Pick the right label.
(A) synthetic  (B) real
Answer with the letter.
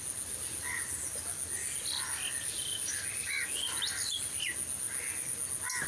B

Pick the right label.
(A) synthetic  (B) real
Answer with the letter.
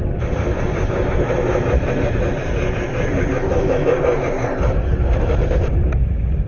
A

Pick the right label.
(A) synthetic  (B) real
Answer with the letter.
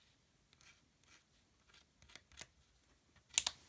B